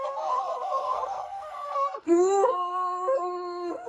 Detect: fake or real fake